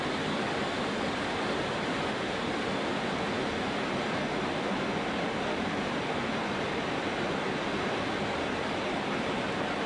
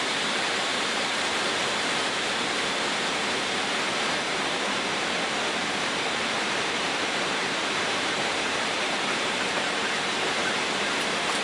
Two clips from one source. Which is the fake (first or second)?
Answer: second